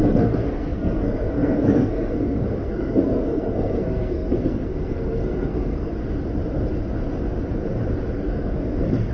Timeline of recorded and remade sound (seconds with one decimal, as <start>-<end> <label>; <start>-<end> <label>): 0.0-5.9 remade; 5.9-8.1 recorded; 8.1-9.1 remade

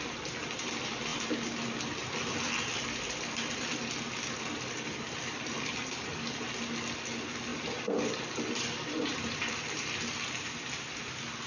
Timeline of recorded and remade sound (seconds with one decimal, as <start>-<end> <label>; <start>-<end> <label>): 0.0-7.5 recorded; 7.5-9.5 remade; 9.5-11.5 recorded

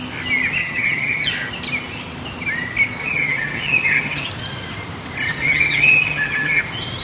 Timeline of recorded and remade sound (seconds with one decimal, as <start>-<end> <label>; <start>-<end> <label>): 0.0-0.6 recorded; 0.6-1.3 remade; 1.3-3.0 recorded; 3.0-4.3 remade; 4.3-5.4 recorded; 5.4-6.6 remade; 6.6-7.0 recorded

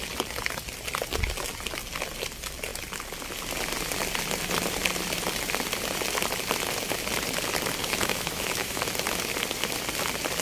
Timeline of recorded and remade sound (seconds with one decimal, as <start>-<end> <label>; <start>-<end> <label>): 0.0-7.8 recorded; 7.8-8.8 remade; 8.8-10.4 recorded

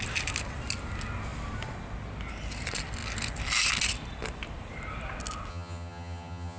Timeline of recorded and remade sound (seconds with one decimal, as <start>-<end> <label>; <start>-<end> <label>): 0.0-5.5 recorded; 5.5-6.6 remade

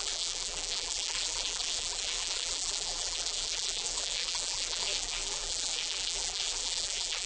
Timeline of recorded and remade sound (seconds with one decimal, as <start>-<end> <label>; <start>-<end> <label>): 0.0-7.3 remade